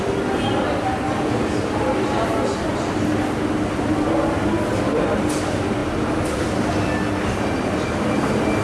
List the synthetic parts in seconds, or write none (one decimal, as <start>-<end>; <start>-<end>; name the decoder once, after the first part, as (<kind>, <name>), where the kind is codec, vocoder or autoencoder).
none